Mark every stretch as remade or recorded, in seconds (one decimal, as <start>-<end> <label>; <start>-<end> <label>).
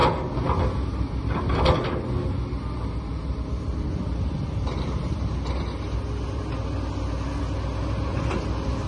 0.0-8.9 recorded